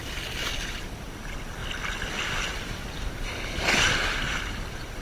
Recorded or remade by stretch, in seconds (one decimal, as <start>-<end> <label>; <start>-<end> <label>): 0.0-5.0 recorded

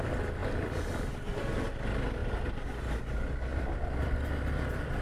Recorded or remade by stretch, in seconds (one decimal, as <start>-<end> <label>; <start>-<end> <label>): 0.0-0.4 recorded; 0.4-1.4 remade; 1.4-3.5 recorded; 3.5-4.3 remade; 4.3-5.0 recorded